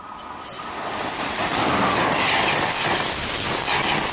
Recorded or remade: recorded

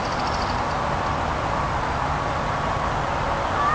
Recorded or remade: recorded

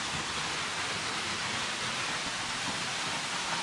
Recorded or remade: recorded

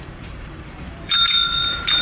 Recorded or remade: remade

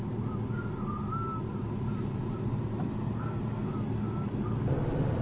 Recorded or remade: recorded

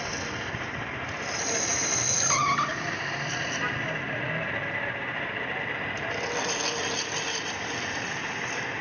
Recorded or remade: remade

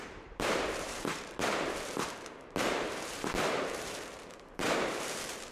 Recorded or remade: remade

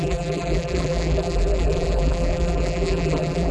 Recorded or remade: remade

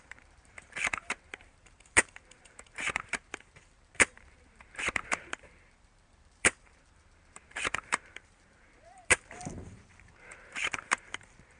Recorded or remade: remade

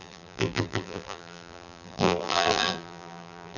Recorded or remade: remade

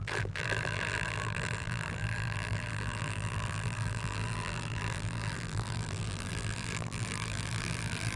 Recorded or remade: remade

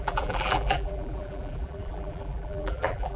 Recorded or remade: remade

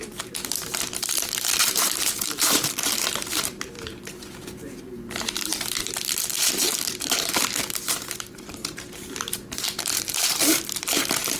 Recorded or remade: remade